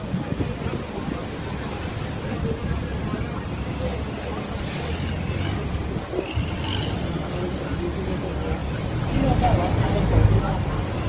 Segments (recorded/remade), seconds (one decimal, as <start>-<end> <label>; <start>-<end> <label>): 0.0-11.1 recorded